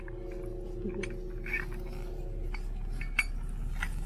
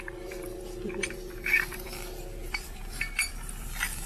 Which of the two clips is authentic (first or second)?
first